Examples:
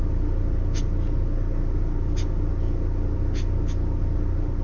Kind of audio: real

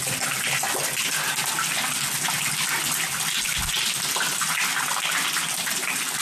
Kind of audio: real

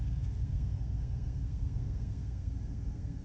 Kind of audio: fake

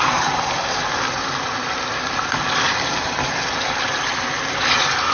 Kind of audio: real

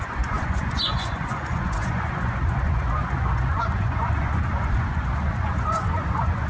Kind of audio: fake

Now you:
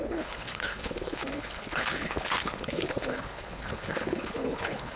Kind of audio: fake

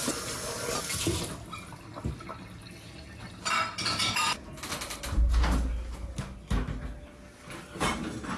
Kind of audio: real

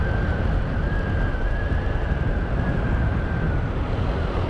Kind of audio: real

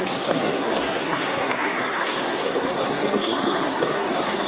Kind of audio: fake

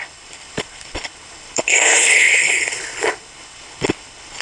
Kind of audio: fake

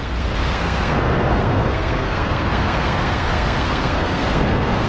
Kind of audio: fake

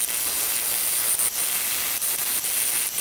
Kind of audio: fake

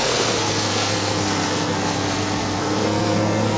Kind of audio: fake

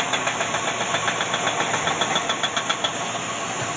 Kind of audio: real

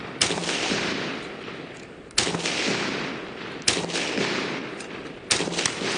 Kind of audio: real